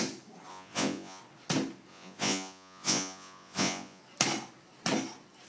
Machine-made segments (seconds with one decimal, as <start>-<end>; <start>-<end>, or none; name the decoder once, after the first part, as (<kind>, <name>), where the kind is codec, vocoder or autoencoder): 0.5-1.2 (vocoder, Vocos); 1.9-4.0